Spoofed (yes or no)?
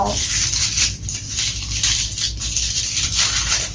yes